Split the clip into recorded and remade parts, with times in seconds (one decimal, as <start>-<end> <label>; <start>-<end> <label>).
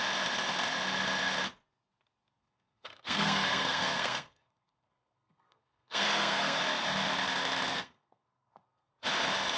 0.0-2.4 recorded; 2.4-6.6 remade; 6.6-7.7 recorded; 7.7-8.9 remade; 8.9-9.6 recorded